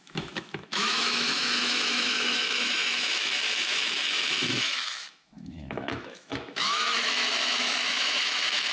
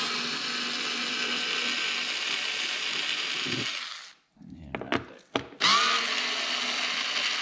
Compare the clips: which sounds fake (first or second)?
first